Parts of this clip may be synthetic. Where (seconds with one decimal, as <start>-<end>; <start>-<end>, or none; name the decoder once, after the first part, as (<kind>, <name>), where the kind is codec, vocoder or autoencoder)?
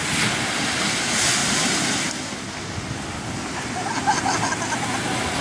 none